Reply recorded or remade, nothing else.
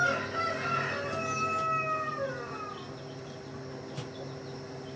recorded